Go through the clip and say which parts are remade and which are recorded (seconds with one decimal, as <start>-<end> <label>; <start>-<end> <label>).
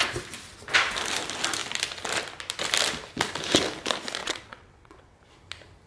0.0-4.2 recorded; 4.2-5.2 remade; 5.2-5.9 recorded